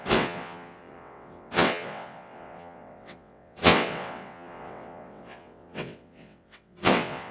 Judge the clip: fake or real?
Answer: fake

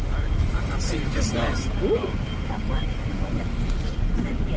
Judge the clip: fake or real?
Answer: fake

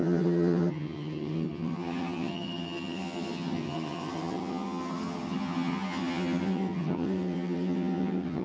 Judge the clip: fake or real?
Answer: fake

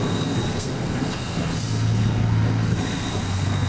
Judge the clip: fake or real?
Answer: fake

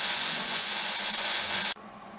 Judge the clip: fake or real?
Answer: fake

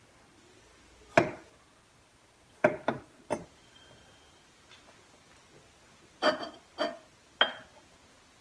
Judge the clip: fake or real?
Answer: real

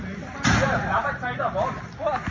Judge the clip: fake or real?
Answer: real